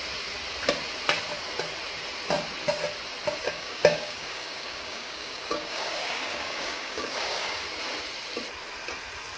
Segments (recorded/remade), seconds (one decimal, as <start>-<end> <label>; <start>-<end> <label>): 0.0-3.4 recorded; 3.4-7.6 remade; 7.6-9.4 recorded